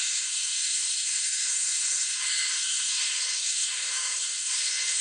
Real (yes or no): no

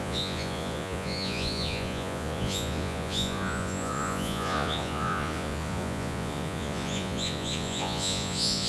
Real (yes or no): no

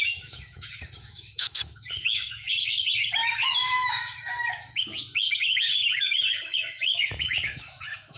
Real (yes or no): no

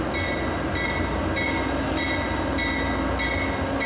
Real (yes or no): yes